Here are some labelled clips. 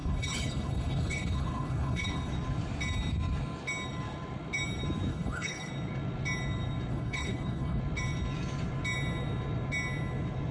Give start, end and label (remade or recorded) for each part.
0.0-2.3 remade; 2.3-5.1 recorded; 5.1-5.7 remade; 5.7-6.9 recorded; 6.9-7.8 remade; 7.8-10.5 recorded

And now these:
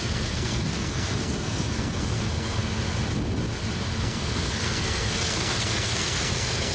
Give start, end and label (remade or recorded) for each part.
0.0-2.6 remade; 2.6-4.0 recorded; 4.0-6.7 remade